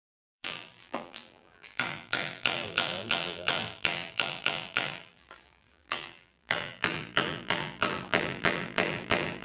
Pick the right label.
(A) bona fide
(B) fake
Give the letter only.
B